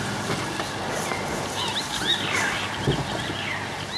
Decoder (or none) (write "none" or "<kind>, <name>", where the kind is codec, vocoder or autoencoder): none